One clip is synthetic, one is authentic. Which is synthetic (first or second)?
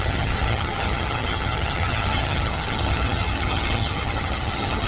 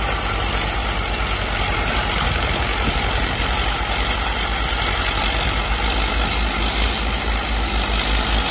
first